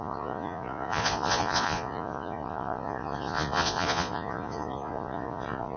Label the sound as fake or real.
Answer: fake